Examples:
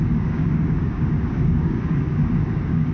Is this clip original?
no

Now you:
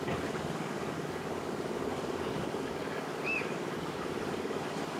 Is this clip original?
no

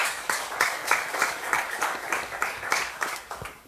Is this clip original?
no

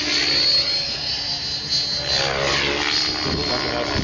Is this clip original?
yes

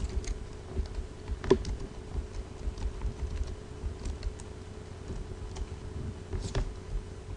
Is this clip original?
yes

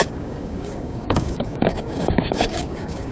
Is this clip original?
no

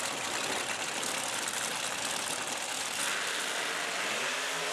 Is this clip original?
yes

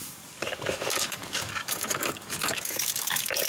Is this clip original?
no